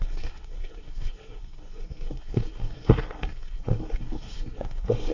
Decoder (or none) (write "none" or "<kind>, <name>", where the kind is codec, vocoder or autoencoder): codec, SNAC